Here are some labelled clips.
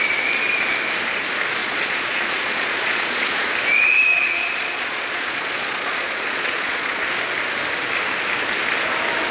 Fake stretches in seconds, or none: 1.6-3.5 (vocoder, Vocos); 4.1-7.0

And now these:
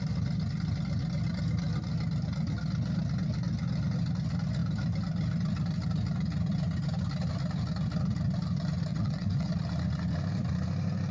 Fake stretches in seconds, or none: 8.9-9.5 (vocoder, WaveNeXt)

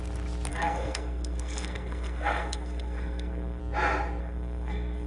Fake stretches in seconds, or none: 0.5-3.6 (codec, SNAC); 4.2-5.1

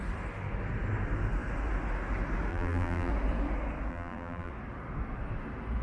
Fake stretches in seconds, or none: 2.5-3.1 (vocoder, BigVGAN v2); 3.9-4.5

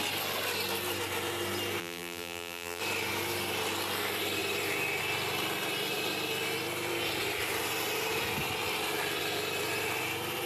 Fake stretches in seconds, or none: 1.8-2.8 (vocoder, BigVGAN v2)